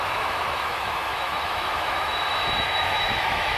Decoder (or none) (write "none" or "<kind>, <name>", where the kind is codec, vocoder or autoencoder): autoencoder, DAC-VAE